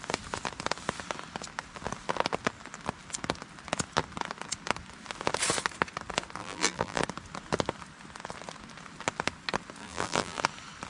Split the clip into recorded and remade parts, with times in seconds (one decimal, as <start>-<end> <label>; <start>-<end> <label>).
0.0-6.4 recorded; 6.4-7.0 remade; 7.0-9.8 recorded; 9.8-10.4 remade; 10.4-10.9 recorded